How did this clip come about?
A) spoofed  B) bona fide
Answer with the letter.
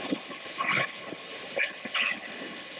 A